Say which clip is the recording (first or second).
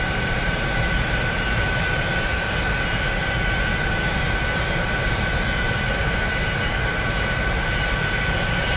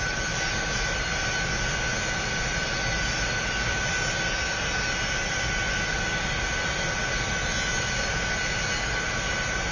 second